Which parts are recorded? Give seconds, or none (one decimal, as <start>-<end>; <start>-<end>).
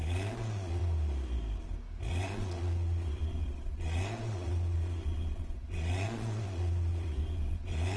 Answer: 0.8-2.1